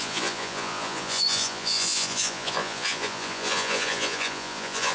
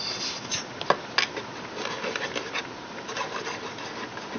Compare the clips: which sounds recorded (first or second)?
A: second